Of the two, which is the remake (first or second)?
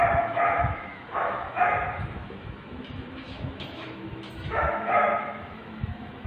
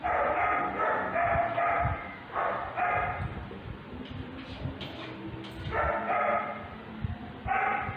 first